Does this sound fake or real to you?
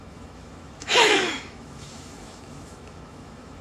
fake